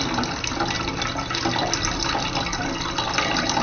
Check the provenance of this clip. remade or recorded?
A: recorded